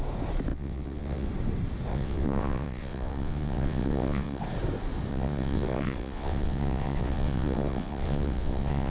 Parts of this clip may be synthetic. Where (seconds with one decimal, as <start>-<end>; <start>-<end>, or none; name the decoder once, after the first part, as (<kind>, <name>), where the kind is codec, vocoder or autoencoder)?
0.5-1.3 (vocoder, WaveNeXt); 1.9-4.4; 5.1-8.9